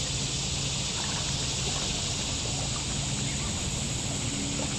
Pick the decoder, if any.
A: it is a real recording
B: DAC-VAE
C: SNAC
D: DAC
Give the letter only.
A